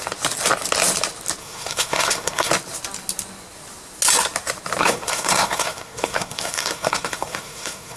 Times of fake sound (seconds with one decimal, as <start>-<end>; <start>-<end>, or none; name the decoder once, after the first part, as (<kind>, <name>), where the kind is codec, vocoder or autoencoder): 1.4-2.5 (codec, SNAC); 4.8-8.0